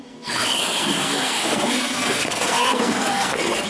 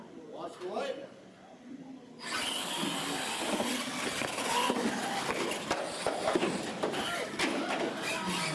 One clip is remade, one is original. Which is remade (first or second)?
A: first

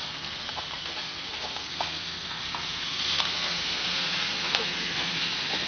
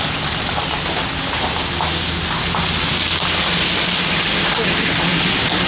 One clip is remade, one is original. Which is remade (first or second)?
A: first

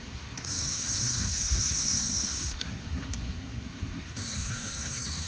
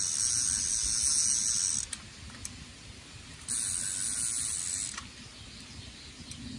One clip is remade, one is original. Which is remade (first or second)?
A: first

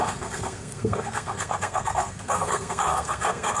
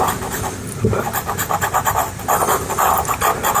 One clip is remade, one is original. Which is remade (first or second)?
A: first